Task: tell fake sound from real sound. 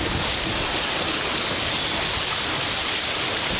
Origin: real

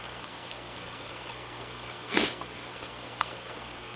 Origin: fake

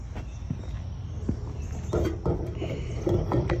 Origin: real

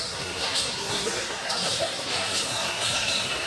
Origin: fake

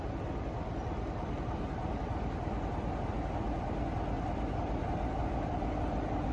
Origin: real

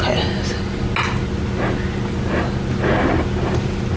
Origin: real